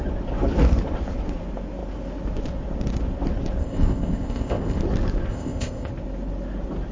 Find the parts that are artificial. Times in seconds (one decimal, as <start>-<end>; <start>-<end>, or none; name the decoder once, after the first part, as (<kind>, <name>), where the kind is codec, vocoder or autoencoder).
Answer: 3.6-4.8 (codec, ZipCodec); 5.3-5.9